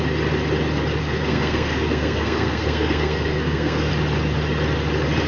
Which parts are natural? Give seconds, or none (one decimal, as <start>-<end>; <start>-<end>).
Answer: 0.0-1.0; 3.9-5.3